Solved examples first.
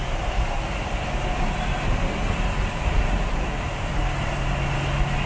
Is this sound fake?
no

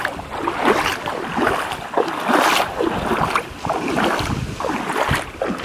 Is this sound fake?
no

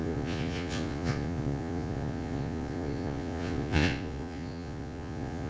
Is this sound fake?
yes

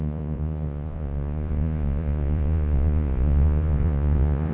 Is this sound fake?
yes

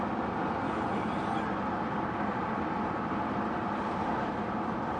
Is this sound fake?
no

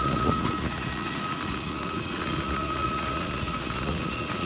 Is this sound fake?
yes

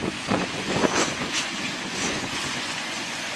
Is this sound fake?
yes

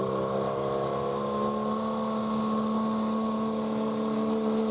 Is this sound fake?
no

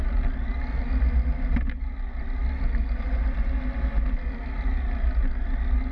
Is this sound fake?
no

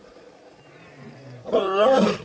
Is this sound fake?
no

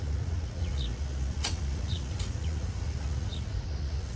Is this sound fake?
yes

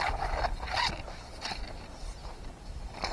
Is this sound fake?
no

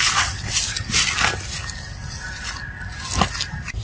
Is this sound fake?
no